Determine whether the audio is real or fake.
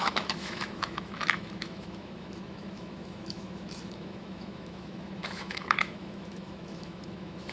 fake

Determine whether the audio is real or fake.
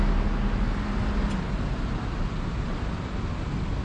real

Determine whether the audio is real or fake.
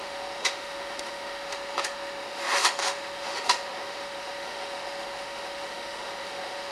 fake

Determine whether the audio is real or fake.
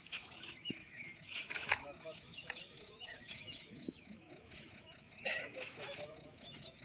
fake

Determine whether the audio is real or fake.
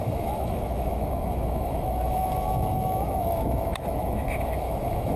fake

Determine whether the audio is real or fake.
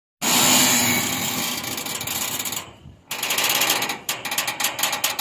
real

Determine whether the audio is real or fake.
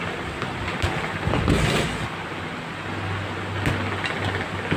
real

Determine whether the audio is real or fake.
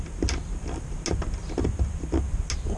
real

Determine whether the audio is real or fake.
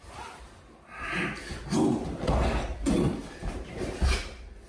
real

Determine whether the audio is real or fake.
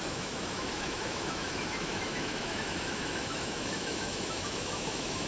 fake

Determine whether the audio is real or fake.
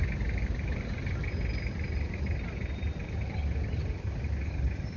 real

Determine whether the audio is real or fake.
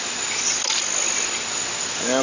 real